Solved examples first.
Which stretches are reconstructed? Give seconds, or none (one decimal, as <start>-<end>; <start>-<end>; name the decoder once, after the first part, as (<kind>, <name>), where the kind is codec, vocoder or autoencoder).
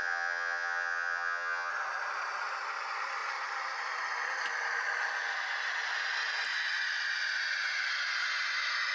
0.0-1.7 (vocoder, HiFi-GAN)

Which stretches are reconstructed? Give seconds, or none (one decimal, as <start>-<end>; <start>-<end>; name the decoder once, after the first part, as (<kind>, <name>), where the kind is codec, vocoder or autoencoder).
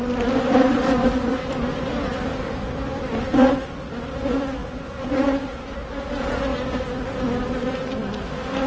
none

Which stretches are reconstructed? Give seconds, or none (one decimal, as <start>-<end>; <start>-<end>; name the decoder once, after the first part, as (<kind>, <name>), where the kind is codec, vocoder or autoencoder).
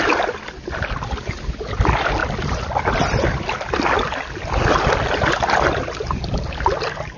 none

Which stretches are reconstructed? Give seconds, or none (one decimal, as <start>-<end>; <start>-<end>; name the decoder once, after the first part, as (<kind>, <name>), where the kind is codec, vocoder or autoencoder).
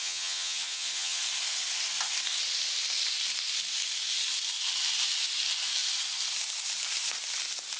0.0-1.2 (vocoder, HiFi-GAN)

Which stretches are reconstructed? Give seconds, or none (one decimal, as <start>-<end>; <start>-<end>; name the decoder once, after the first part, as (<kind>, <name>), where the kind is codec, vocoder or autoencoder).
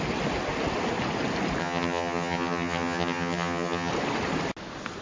1.6-3.9 (vocoder, HiFi-GAN)